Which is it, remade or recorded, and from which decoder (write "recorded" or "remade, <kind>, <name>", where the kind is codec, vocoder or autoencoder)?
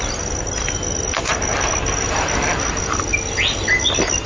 recorded